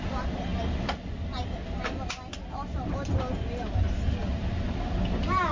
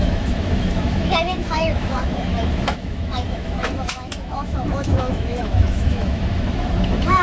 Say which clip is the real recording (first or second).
first